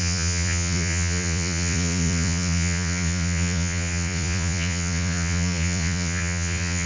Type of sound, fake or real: fake